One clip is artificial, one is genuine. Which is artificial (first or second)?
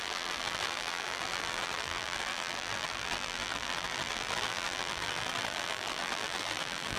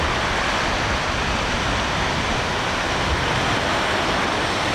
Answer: first